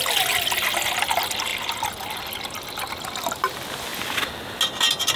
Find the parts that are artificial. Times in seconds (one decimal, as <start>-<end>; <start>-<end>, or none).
none

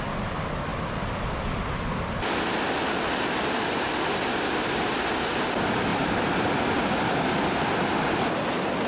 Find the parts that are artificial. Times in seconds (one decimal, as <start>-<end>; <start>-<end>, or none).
0.7-4.6; 5.9-7.7

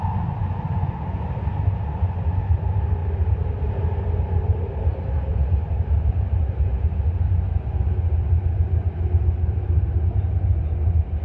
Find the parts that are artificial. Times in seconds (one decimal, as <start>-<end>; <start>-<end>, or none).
none

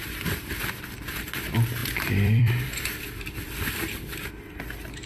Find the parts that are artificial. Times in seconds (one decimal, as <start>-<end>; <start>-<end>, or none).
1.8-4.3

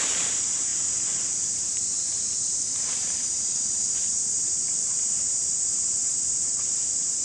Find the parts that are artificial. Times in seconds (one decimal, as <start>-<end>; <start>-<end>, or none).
0.0-0.7; 1.3-7.2